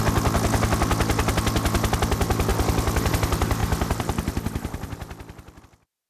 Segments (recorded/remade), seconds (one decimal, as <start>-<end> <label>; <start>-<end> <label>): 0.0-2.5 recorded; 2.5-3.1 remade; 3.1-3.6 recorded; 3.6-5.6 remade; 5.6-6.1 recorded